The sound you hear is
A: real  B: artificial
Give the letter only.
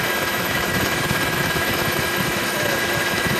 B